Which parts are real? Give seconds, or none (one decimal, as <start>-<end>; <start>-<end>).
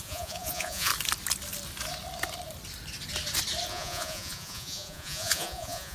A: 0.9-3.7